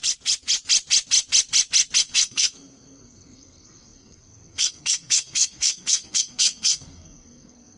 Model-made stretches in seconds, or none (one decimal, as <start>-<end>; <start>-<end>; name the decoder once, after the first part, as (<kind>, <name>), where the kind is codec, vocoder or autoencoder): 2.0-7.8 (codec, SNAC)